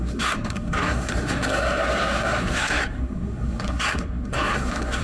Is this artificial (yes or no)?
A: yes